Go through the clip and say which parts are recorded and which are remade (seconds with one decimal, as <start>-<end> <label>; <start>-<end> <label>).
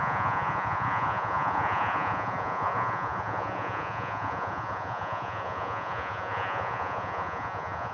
0.0-7.9 remade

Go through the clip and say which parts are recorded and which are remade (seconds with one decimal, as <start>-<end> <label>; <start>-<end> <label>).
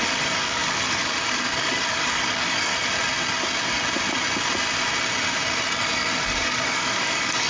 0.0-2.7 remade; 2.7-5.8 recorded; 5.8-7.5 remade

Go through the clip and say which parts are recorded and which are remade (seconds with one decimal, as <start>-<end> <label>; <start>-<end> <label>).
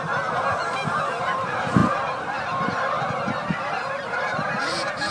0.0-5.1 remade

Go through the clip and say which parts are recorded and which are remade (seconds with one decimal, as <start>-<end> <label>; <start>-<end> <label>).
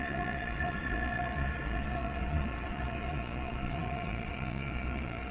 0.0-5.3 remade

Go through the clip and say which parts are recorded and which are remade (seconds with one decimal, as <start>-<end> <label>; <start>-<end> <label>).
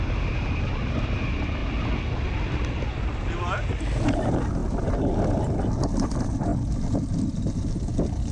0.0-8.3 recorded